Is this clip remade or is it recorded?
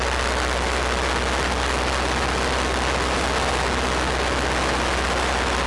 recorded